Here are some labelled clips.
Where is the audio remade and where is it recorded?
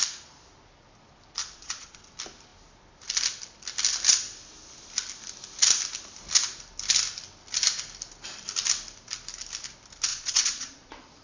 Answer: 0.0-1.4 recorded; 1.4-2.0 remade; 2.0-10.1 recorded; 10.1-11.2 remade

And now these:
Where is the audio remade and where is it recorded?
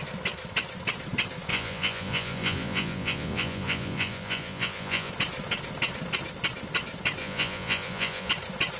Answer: 0.0-1.5 recorded; 1.5-5.1 remade; 5.1-7.2 recorded; 7.2-8.3 remade; 8.3-8.8 recorded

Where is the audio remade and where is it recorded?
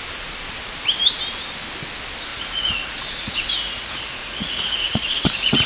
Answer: 0.0-2.3 recorded; 2.3-5.7 remade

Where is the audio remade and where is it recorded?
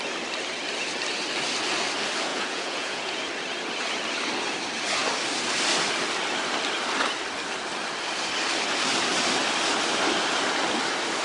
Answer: 0.0-2.3 recorded; 2.3-3.2 remade; 3.2-11.2 recorded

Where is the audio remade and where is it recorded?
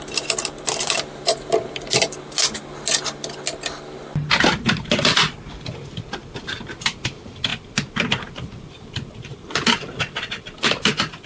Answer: 0.0-11.3 recorded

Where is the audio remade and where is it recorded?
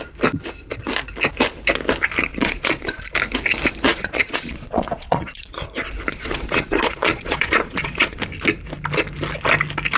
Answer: 0.0-2.3 recorded; 2.3-3.0 remade; 3.0-3.9 recorded; 3.9-5.6 remade; 5.6-6.1 recorded; 6.1-8.2 remade; 8.2-10.0 recorded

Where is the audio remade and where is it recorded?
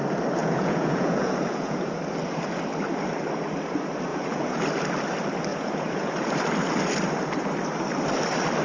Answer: 0.0-0.4 recorded; 0.4-2.0 remade; 2.0-4.1 recorded; 4.1-4.6 remade; 4.6-5.5 recorded; 5.5-6.1 remade; 6.1-8.6 recorded